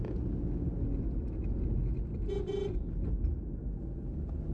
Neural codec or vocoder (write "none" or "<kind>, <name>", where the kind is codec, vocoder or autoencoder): none